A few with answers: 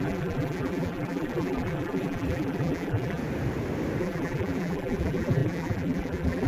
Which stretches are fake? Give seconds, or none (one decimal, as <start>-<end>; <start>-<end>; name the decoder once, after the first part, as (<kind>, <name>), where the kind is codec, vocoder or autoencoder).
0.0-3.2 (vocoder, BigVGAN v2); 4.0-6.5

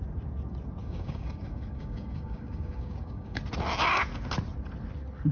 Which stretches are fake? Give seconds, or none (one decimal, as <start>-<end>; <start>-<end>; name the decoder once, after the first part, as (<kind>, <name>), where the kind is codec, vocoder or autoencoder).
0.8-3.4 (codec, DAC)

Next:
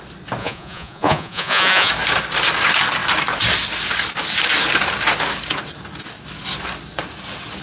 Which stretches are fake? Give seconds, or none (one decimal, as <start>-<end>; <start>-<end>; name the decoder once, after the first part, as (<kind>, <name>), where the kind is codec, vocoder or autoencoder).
0.4-1.9 (vocoder, Vocos)

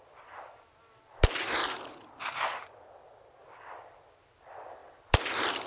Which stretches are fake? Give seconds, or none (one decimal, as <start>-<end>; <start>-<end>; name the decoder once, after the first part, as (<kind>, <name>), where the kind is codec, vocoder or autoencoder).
none

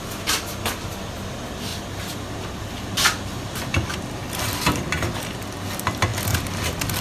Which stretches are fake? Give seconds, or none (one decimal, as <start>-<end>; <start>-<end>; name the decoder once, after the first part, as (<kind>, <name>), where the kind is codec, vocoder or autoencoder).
none